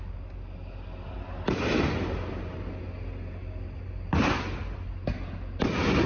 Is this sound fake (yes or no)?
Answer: no